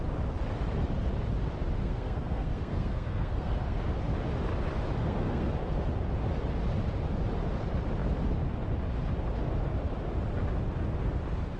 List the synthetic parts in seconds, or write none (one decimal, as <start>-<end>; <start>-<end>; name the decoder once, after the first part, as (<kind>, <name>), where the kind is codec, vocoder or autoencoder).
1.8-3.8 (codec, SNAC); 5.0-5.5